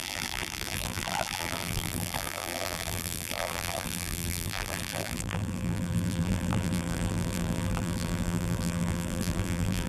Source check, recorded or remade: remade